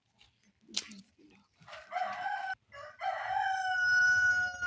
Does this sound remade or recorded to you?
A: recorded